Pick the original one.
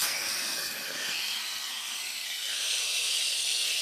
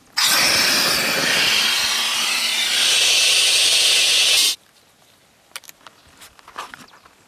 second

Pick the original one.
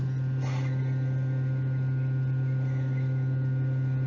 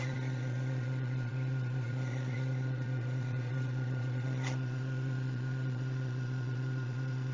first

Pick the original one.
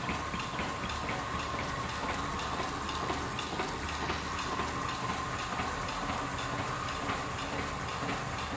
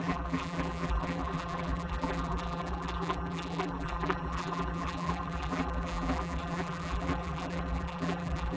first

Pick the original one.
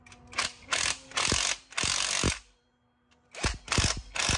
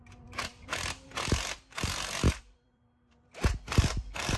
first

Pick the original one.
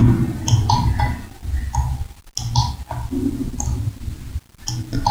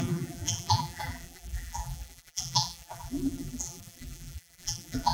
first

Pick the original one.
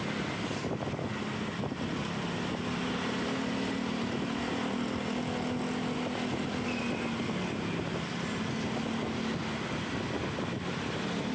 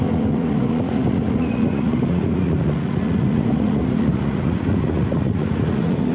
first